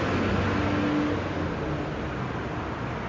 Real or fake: real